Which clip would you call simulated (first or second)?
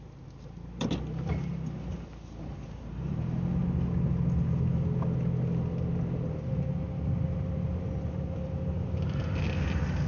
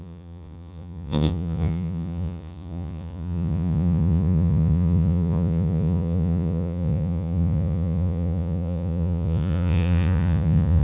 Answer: second